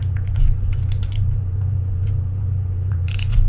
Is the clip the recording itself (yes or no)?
no